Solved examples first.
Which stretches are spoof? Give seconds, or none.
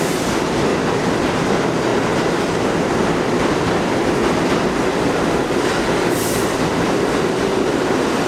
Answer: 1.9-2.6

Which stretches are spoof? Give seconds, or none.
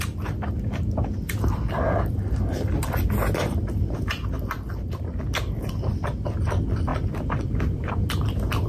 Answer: none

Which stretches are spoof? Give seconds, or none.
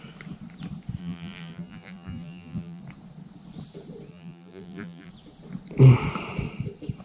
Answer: 1.0-2.8; 4.1-5.1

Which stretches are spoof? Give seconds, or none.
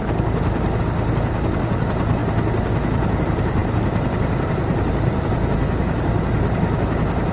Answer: none